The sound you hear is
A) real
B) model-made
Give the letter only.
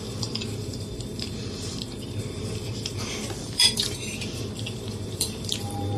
B